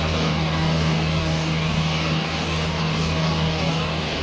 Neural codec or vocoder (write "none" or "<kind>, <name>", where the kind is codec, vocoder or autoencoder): codec, DAC